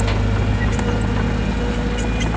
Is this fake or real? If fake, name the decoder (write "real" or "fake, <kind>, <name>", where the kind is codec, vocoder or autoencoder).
real